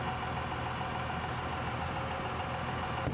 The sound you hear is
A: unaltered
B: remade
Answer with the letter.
A